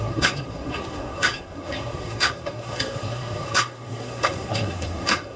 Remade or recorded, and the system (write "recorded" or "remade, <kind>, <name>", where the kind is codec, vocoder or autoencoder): remade, codec, SNAC